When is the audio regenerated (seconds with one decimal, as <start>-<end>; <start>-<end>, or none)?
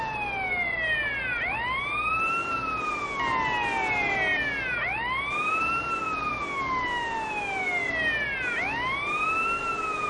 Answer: none